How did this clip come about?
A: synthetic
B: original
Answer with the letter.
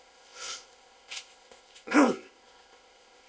A